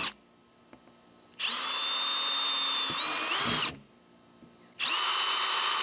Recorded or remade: recorded